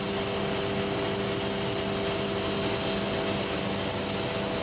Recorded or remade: recorded